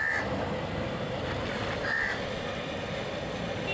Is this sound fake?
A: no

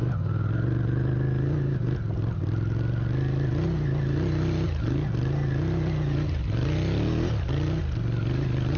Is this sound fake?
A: no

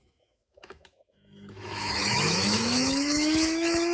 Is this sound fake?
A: yes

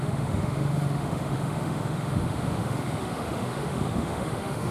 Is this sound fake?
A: yes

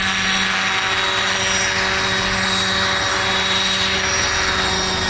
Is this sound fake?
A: no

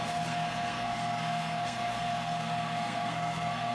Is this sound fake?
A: yes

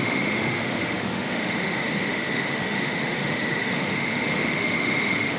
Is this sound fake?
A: yes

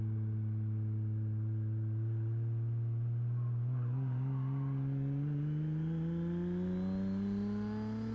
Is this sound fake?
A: no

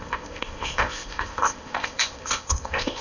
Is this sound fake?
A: yes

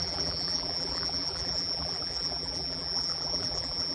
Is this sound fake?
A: yes